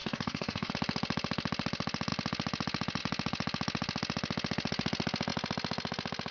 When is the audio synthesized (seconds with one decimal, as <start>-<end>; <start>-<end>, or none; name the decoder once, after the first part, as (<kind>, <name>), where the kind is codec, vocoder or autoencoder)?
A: 0.0-0.7 (codec, DAC)